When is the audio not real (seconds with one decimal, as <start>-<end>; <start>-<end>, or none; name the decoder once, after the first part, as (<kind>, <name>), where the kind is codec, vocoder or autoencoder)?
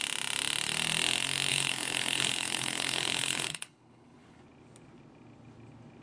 1.5-4.4 (codec, HILCodec)